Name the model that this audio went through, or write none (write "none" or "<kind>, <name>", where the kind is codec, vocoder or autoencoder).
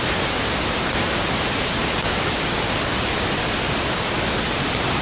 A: none